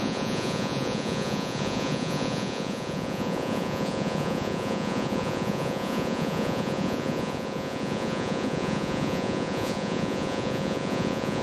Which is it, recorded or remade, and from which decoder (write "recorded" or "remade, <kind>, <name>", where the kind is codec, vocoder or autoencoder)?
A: remade, vocoder, Vocos